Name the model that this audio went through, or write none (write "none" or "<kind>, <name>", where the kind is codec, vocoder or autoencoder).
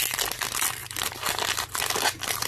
none